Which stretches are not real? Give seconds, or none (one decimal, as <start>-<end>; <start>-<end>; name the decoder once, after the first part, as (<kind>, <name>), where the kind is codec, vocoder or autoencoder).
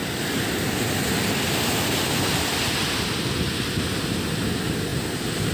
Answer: none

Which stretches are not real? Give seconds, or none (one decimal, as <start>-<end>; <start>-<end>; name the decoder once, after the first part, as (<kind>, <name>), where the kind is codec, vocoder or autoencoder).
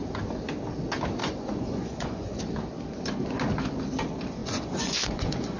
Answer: 1.2-2.4 (vocoder, Vocos); 4.4-5.6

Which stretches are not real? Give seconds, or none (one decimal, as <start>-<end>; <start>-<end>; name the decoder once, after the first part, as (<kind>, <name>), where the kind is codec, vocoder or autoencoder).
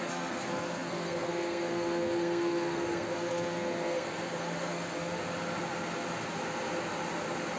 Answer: 0.0-5.2 (codec, SNAC)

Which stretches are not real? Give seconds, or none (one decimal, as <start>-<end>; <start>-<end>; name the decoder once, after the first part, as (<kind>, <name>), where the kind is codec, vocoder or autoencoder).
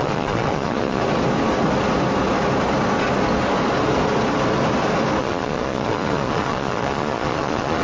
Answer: 0.0-1.0 (vocoder, Vocos); 5.2-7.8